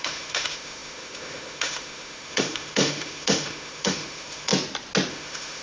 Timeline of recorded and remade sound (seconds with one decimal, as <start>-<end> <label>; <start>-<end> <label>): 0.0-4.5 remade; 4.5-5.1 recorded; 5.1-5.6 remade